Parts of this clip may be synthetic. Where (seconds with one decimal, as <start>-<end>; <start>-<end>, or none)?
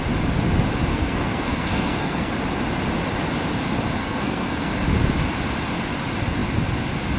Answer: 0.9-2.3; 4.0-4.7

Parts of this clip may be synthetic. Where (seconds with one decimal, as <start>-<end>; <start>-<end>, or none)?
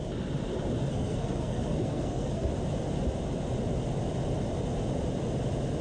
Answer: 0.9-2.5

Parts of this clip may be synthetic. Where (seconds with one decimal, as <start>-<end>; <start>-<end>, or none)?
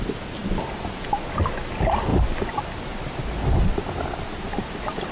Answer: none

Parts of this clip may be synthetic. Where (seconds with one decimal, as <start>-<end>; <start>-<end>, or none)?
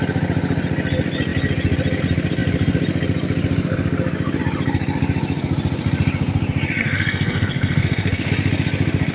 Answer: 6.8-8.3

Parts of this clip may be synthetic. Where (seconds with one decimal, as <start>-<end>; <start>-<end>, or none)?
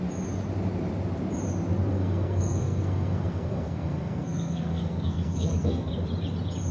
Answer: 1.9-5.9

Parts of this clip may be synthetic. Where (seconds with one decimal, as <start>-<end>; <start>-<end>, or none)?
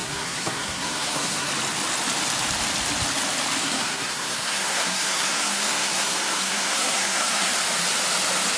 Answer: 0.0-1.5; 3.6-7.5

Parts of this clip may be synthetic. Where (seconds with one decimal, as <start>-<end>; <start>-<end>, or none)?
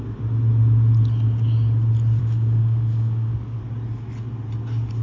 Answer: 2.2-3.6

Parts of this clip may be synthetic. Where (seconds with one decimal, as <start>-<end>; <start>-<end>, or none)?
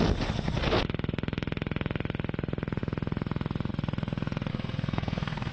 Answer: 4.5-5.5